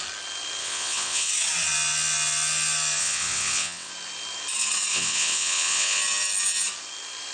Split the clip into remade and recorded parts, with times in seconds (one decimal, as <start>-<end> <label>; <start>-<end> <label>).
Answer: 0.0-0.6 recorded; 0.6-1.3 remade; 1.3-3.0 recorded; 3.0-3.9 remade; 3.9-4.9 recorded; 4.9-6.0 remade; 6.0-7.3 recorded